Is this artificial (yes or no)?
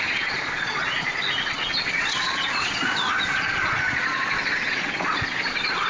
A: yes